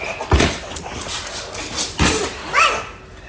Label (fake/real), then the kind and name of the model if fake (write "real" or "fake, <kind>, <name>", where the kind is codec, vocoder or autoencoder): real